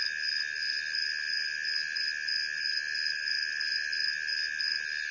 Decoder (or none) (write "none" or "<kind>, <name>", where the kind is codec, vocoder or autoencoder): none